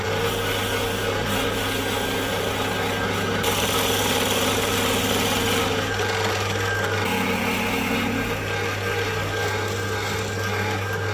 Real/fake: real